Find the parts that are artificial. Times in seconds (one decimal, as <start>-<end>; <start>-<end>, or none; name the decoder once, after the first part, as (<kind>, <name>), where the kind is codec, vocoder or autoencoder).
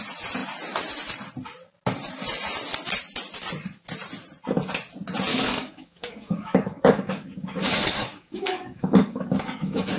5.3-10.0 (codec, DAC)